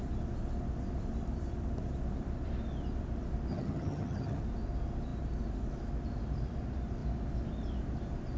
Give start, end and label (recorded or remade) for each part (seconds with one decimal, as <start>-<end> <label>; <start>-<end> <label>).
0.0-3.5 recorded; 3.5-4.4 remade; 4.4-8.4 recorded